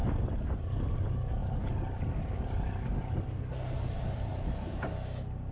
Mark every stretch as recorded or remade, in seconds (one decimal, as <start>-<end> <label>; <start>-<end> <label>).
0.0-5.5 recorded